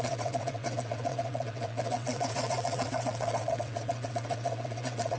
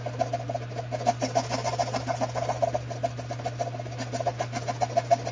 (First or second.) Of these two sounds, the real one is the second